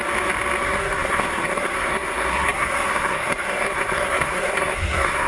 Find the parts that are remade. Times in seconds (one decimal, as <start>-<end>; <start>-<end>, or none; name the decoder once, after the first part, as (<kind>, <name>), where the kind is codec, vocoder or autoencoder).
0.6-5.3 (codec, SNAC)